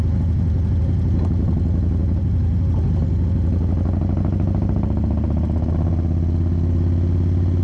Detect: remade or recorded recorded